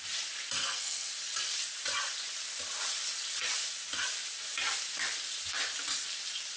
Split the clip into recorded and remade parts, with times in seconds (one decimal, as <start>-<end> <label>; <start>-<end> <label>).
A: 0.0-0.6 recorded; 0.6-1.1 remade; 1.1-6.6 recorded